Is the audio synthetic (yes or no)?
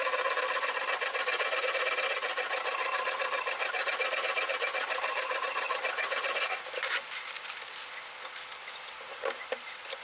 no